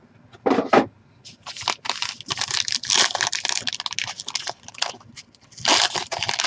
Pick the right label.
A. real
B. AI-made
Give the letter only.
A